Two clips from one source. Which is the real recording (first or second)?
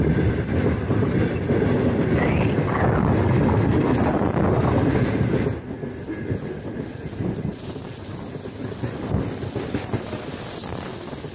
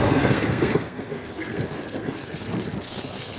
first